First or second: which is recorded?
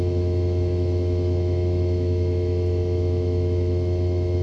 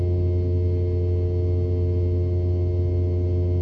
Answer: second